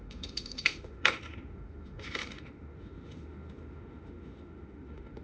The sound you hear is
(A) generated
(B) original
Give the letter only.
A